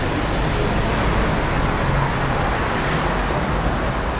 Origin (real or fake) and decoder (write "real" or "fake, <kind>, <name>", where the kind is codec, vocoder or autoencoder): real